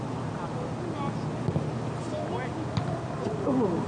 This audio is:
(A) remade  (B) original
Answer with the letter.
B